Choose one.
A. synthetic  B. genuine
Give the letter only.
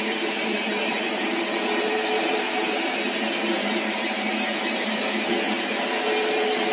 A